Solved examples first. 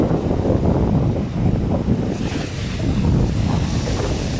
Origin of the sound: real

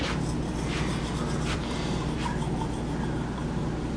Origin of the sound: real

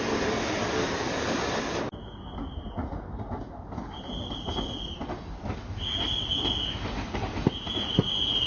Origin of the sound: real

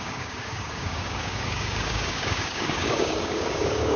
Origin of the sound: fake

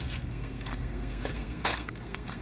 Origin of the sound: fake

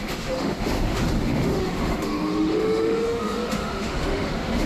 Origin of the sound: fake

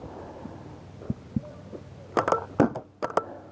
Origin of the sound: real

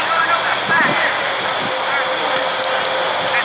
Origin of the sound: real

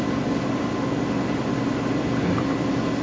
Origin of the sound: real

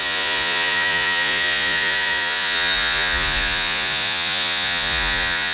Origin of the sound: fake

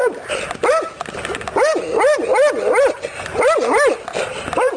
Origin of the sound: real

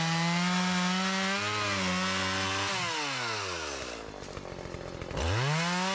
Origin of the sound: real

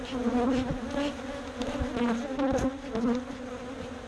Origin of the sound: real